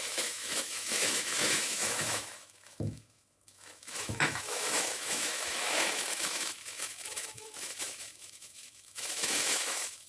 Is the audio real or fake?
fake